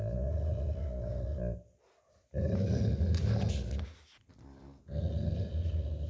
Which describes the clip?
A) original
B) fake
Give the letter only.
A